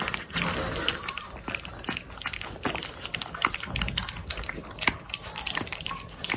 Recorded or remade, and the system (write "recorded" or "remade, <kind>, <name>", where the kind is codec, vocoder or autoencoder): recorded